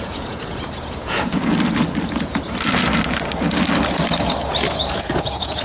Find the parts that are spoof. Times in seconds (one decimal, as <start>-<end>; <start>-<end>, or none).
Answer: 0.0-1.3; 4.7-5.6